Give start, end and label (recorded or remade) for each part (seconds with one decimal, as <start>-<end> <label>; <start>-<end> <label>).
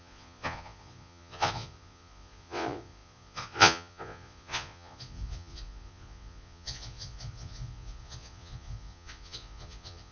0.0-10.1 remade